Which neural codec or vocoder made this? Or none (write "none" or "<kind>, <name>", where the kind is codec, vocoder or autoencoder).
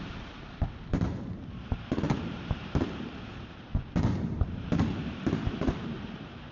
vocoder, BigVGAN v2